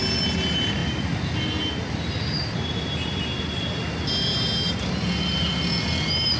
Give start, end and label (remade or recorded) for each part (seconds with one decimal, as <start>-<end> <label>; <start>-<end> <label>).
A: 0.0-6.4 recorded